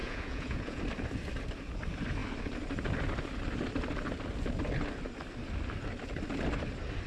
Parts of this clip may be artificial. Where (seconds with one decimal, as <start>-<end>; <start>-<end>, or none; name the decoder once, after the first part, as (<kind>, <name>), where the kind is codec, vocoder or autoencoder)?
0.0-0.8 (vocoder, Vocos)